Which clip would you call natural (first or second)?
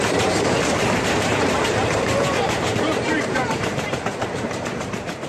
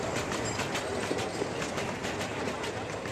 second